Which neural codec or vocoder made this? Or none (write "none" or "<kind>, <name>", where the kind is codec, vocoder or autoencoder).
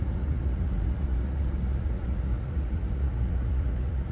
vocoder, Vocos